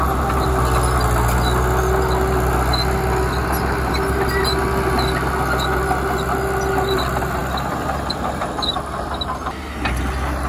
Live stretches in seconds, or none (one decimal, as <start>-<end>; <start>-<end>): 0.0-10.5